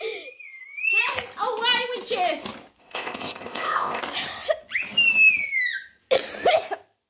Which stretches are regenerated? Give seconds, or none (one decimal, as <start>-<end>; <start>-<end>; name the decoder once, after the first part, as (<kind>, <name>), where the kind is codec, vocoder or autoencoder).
2.8-4.0 (codec, ZipCodec)